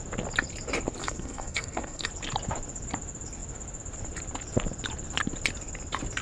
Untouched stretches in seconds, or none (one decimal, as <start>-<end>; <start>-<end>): 0.0-1.0; 2.1-6.2